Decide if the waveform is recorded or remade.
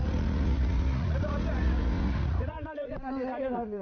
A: remade